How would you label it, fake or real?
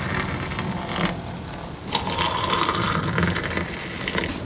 real